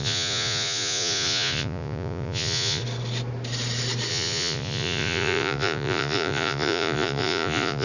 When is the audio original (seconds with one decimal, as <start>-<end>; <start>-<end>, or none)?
2.8-4.1